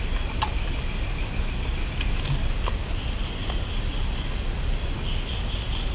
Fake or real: real